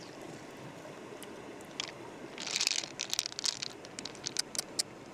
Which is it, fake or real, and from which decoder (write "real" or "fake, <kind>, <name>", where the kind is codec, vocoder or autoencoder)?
real